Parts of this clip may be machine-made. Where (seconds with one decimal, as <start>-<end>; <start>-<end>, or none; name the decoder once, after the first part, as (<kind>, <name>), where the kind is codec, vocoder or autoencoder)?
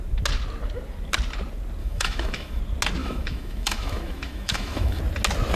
1.8-2.6 (autoencoder, DAC-VAE); 3.0-5.0